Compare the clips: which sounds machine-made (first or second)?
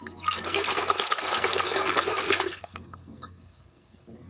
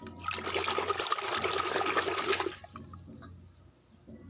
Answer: first